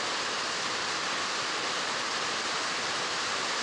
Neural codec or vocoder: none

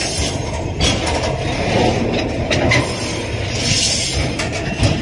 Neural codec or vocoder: none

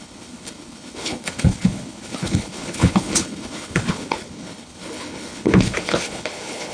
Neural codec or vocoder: codec, HILCodec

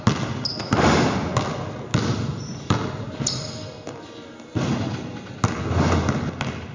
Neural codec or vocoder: none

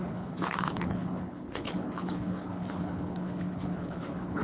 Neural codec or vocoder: codec, HILCodec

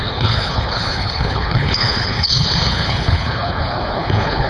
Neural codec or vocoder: codec, HILCodec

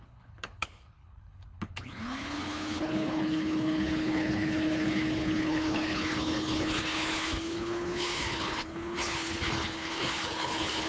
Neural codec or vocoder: codec, HILCodec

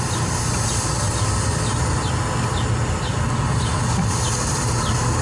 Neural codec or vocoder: none